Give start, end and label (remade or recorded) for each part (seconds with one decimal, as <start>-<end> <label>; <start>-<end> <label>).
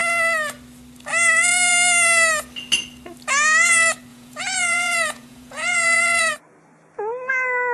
0.0-4.1 recorded; 4.1-6.4 remade; 6.4-7.7 recorded